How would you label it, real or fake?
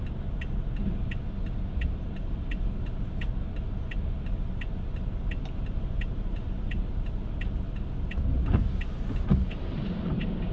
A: real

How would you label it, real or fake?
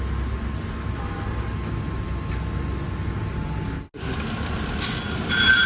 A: real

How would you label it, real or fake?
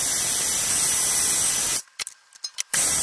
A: real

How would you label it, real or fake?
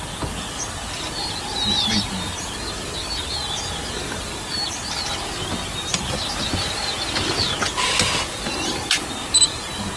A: real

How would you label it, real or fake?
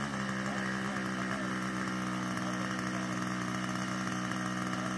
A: real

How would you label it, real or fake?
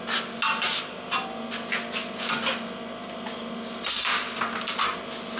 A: real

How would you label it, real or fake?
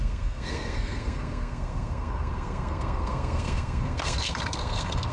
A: fake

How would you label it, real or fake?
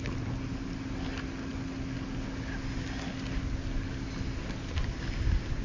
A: real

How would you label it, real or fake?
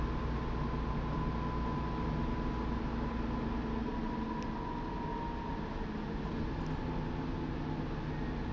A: real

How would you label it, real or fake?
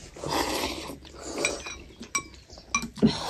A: real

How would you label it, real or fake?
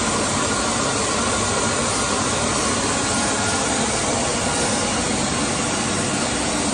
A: real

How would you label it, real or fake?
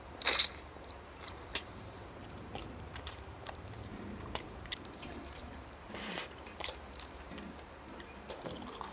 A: fake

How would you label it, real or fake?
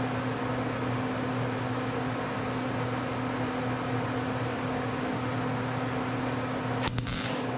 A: real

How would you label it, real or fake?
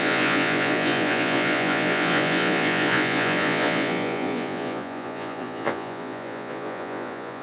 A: fake